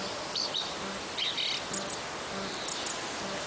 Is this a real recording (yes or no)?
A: yes